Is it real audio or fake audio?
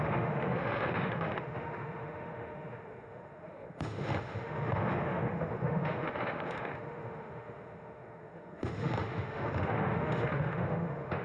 fake